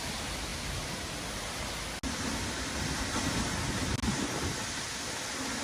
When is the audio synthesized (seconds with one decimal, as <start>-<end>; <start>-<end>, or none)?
none